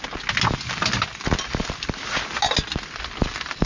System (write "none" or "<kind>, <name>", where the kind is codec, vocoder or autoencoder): none